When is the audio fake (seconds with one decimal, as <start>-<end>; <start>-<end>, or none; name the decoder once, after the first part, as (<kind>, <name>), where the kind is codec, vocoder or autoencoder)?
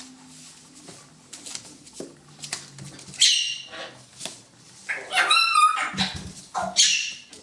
4.1-5.9 (vocoder, BigVGAN v2)